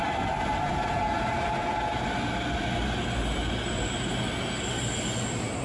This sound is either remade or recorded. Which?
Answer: recorded